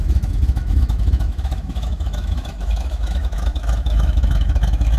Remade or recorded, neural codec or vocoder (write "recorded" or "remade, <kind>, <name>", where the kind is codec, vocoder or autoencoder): remade, autoencoder, DAC-VAE